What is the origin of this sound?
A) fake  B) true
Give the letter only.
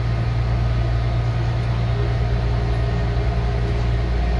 B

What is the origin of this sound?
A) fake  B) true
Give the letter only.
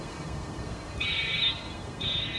A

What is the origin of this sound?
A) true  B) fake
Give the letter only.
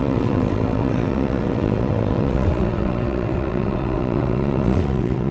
B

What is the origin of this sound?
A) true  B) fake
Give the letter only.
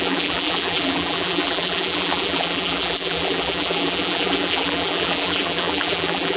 B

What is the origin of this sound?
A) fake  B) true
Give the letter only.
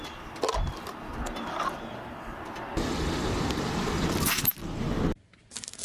B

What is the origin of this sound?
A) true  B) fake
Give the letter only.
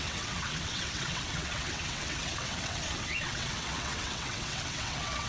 B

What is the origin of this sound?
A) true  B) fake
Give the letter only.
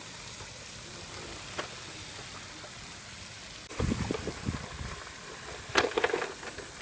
A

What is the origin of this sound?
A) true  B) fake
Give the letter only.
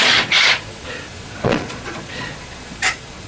B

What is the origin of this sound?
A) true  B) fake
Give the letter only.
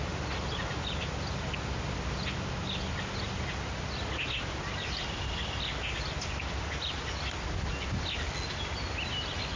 A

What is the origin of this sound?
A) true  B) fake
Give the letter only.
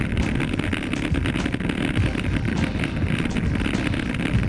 A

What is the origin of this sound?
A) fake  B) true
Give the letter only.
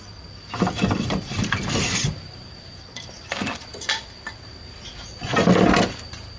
B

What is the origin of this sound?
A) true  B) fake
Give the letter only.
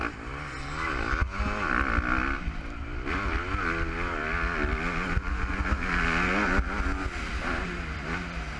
A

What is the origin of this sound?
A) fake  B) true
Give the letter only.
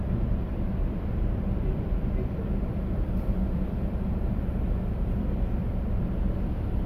A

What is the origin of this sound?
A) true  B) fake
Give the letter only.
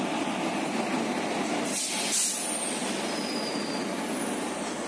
A